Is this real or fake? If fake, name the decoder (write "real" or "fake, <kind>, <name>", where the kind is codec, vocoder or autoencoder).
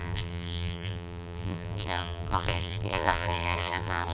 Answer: fake, vocoder, BigVGAN v2